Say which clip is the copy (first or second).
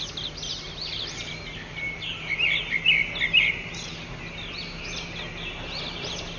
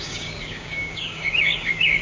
second